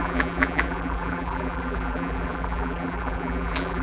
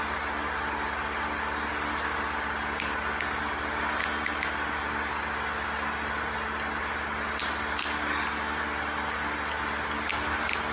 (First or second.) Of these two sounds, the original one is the second